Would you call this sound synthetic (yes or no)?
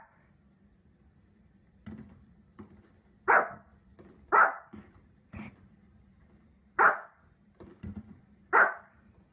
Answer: yes